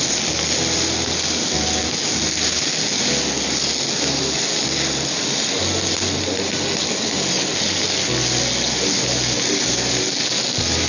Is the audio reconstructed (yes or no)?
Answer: no